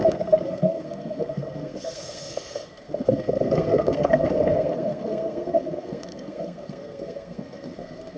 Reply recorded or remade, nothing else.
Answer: remade